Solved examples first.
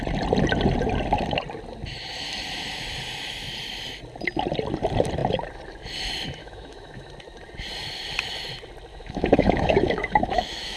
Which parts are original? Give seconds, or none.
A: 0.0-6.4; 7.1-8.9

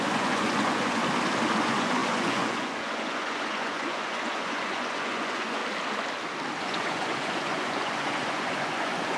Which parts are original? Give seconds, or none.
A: 1.0-1.6; 5.6-6.6

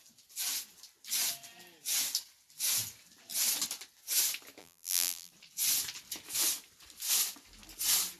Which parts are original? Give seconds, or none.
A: 0.0-4.6; 5.3-8.2

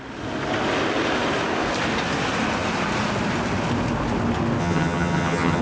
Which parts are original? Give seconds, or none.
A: 0.0-4.6

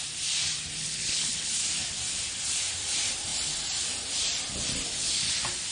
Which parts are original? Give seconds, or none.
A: 0.0-0.8; 1.5-5.7

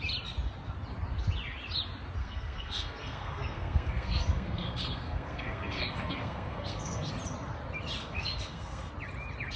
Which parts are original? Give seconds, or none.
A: 0.0-2.2; 7.1-8.0; 8.9-9.6

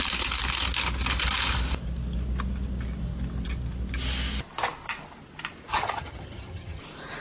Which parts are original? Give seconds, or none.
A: 0.0-5.7; 6.8-7.2